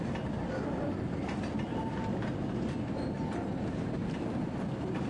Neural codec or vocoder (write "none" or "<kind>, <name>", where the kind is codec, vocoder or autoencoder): none